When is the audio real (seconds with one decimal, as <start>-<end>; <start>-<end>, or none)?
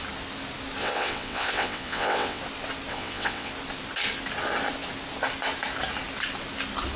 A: 0.0-0.8; 2.4-2.9; 3.5-7.0